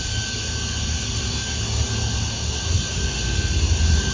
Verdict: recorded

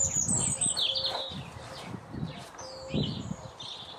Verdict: remade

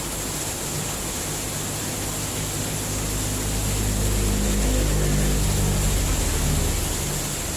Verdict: recorded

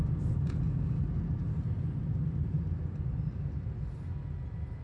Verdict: recorded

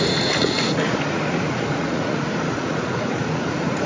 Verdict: remade